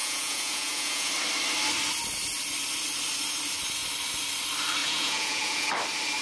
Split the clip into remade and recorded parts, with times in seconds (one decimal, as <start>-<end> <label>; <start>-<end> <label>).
0.0-1.1 remade; 1.1-4.8 recorded; 4.8-5.7 remade; 5.7-6.2 recorded